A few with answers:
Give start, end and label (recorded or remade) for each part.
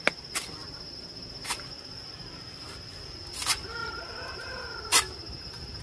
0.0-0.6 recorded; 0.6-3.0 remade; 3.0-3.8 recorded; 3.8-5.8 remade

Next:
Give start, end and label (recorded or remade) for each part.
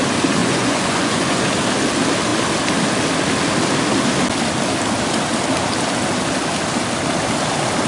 0.0-0.4 recorded; 0.4-1.4 remade; 1.4-7.9 recorded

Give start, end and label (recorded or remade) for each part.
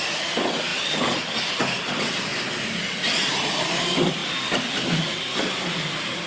0.0-4.2 recorded; 4.2-5.5 remade; 5.5-6.3 recorded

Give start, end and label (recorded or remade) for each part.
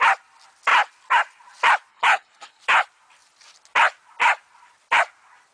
0.0-1.9 recorded; 1.9-2.6 remade; 2.6-5.5 recorded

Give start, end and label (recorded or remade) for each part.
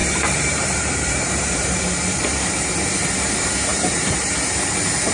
0.0-1.8 remade; 1.8-3.7 recorded; 3.7-4.3 remade; 4.3-5.1 recorded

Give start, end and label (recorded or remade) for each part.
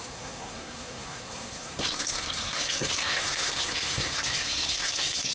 0.0-5.3 remade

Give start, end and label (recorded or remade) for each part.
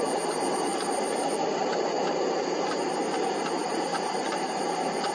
0.0-0.7 recorded; 0.7-2.2 remade; 2.2-3.6 recorded; 3.6-4.4 remade; 4.4-5.1 recorded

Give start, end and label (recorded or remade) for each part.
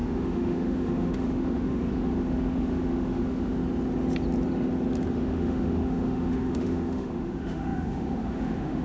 0.0-3.6 remade; 3.6-5.1 recorded; 5.1-8.8 remade